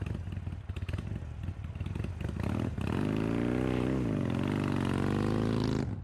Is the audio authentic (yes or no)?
yes